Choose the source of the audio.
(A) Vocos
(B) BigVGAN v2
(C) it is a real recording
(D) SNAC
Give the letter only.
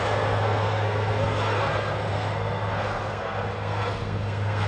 D